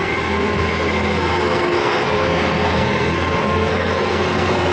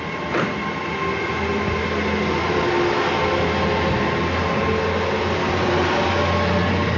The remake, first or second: first